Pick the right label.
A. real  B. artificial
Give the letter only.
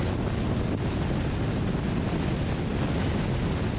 A